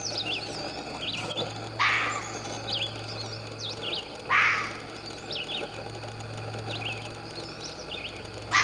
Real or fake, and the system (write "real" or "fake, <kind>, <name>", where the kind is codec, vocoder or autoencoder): real